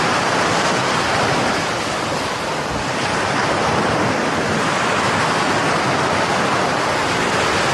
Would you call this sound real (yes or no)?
yes